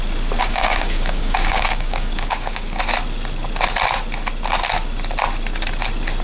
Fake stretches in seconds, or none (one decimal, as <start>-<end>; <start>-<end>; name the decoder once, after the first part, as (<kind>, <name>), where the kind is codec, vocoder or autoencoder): 0.4-2.8 (codec, DAC)